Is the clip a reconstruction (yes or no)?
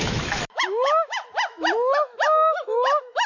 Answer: yes